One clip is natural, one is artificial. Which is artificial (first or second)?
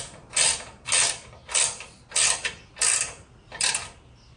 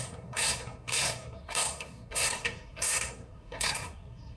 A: second